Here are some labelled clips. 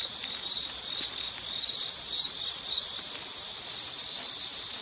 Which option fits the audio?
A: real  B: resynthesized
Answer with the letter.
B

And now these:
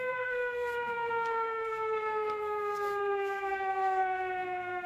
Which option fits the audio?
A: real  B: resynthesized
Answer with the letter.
B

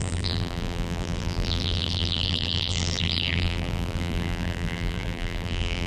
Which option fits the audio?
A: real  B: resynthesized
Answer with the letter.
B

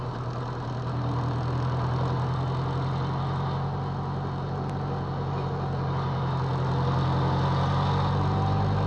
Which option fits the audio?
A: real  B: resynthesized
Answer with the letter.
A